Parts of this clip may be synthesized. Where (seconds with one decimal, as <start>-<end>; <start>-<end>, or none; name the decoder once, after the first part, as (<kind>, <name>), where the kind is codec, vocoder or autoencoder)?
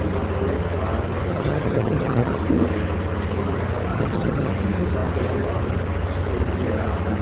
1.3-2.4 (vocoder, HiFi-GAN); 3.9-4.5